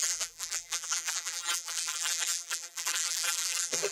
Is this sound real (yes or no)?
no